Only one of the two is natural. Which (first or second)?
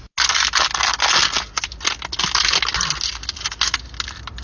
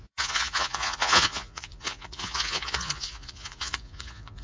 first